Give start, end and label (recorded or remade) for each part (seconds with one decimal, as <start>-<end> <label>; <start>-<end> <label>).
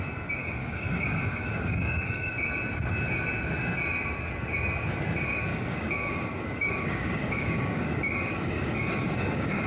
0.0-0.4 recorded; 0.4-2.3 remade; 2.3-5.5 recorded; 5.5-9.7 remade